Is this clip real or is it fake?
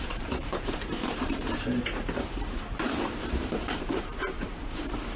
fake